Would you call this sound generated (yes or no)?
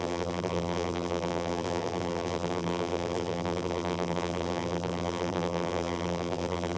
yes